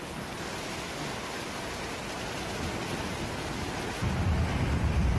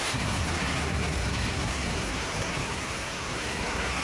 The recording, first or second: first